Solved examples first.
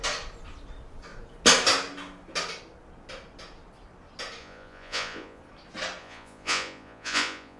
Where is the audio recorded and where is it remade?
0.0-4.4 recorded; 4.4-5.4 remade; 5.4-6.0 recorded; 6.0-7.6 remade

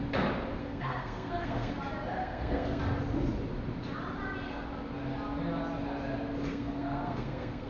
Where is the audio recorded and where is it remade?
0.0-0.6 recorded; 0.6-1.7 remade; 1.7-2.2 recorded; 2.2-2.8 remade; 2.8-6.5 recorded; 6.5-7.7 remade

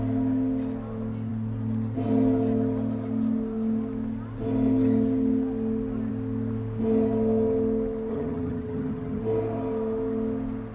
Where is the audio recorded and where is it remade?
0.0-8.1 recorded; 8.1-9.2 remade; 9.2-10.7 recorded

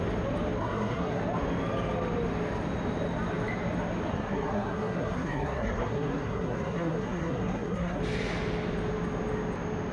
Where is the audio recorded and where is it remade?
0.0-0.6 recorded; 0.6-1.2 remade; 1.2-4.1 recorded; 4.1-8.0 remade; 8.0-9.9 recorded